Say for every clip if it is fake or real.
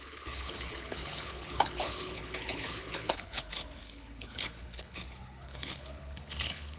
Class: fake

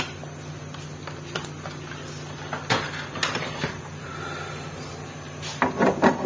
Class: real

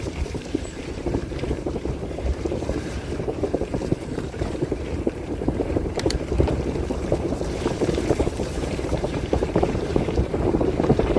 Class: fake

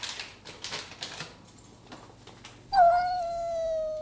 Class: real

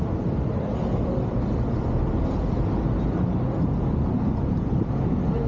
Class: real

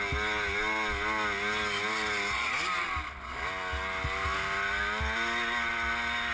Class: real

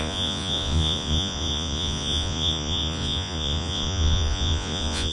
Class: fake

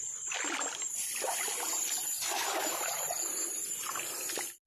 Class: fake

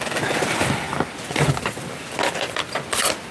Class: real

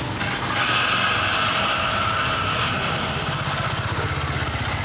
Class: real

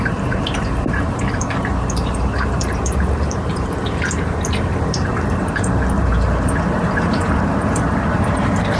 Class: fake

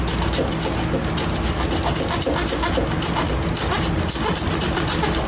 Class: real